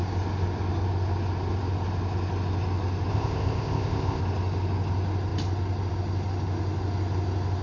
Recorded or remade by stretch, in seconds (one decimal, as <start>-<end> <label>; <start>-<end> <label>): 0.0-3.1 recorded; 3.1-4.2 remade; 4.2-7.6 recorded